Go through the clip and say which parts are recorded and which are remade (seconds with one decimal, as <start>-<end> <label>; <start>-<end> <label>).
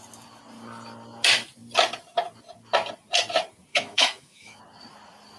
0.0-3.7 recorded; 3.7-4.6 remade; 4.6-5.4 recorded